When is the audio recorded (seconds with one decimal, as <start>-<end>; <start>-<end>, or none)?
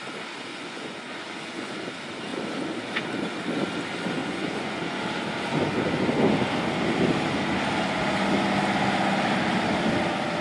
0.0-0.5; 1.7-4.2; 5.0-10.4